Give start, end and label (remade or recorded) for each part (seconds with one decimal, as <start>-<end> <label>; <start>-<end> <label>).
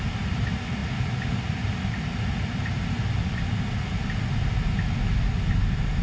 0.0-6.0 recorded